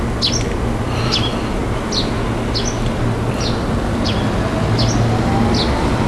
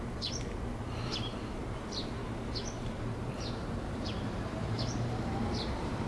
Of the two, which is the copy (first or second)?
second